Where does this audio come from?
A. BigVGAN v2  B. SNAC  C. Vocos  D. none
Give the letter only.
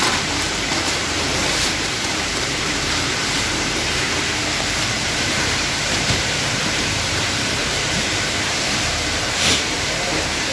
A